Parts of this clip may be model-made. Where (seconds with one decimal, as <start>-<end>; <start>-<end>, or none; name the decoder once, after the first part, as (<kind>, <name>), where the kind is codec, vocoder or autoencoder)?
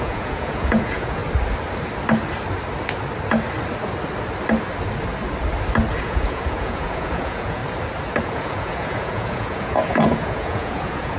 0.0-1.2 (vocoder, Vocos); 6.0-7.6; 8.2-11.2